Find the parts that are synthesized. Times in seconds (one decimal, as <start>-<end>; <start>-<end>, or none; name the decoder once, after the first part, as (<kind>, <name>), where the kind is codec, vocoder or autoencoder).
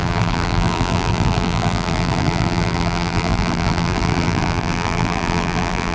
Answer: 0.0-5.9 (vocoder, BigVGAN v2)